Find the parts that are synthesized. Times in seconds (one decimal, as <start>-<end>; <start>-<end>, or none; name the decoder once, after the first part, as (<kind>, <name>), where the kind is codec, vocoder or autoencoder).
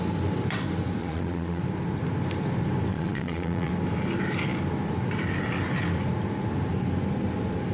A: 1.0-1.6 (vocoder, Vocos); 2.9-3.7